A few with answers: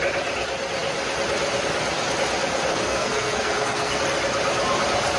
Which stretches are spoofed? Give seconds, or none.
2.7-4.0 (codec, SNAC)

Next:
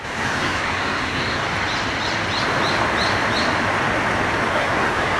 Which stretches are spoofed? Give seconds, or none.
0.0-1.4 (codec, SNAC); 4.5-5.2

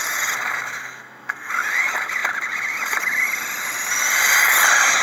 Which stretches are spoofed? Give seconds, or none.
0.8-1.5 (codec, SNAC)

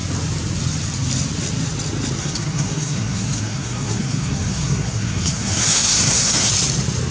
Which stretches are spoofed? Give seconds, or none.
2.2-6.5 (codec, SNAC)

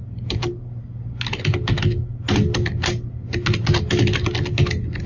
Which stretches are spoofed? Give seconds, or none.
none

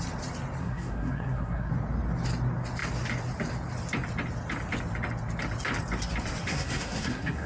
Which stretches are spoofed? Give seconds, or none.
0.6-1.7 (codec, SNAC); 6.5-7.5